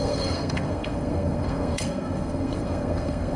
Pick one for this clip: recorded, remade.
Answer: remade